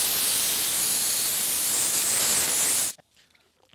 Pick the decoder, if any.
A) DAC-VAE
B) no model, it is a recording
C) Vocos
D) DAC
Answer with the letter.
B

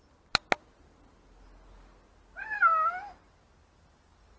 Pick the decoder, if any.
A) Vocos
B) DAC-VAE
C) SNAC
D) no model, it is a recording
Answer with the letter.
D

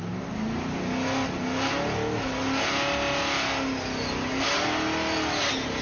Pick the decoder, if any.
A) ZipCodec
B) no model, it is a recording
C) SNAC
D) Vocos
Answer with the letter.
B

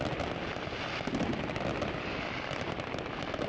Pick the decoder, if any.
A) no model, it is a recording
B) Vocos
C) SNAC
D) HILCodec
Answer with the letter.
A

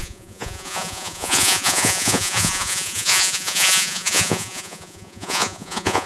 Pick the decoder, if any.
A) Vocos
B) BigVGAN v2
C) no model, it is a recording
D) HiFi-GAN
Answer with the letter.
A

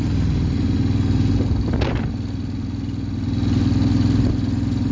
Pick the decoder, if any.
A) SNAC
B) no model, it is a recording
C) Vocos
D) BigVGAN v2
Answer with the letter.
B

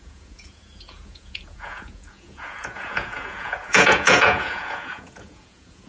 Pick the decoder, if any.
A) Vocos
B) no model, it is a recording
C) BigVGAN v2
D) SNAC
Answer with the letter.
A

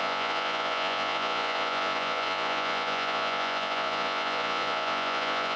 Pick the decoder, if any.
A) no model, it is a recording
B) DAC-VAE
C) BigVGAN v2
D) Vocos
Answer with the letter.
D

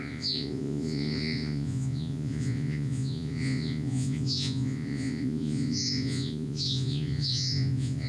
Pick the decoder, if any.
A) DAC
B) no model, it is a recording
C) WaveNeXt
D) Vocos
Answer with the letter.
D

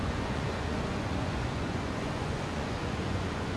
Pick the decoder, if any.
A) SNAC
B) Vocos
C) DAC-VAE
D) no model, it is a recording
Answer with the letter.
B